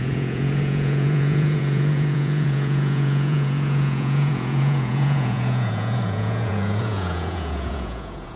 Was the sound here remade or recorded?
remade